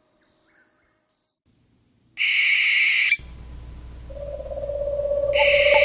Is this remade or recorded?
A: recorded